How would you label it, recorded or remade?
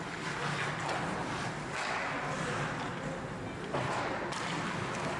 recorded